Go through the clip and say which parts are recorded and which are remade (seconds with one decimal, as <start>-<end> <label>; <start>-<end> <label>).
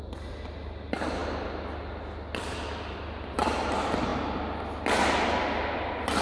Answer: 0.0-6.2 recorded